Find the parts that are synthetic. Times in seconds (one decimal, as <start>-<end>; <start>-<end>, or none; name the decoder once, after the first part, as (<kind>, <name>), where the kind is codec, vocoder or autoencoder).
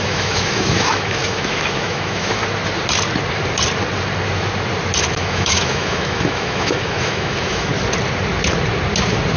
0.0-2.4 (autoencoder, DAC-VAE); 5.1-7.7